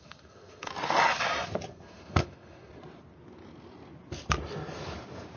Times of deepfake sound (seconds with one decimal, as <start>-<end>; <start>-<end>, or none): 0.0-0.7; 1.7-2.7